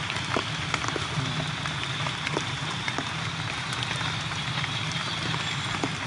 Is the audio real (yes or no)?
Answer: no